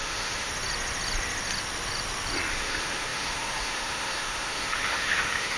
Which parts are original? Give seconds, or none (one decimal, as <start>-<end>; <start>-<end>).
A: 0.5-2.5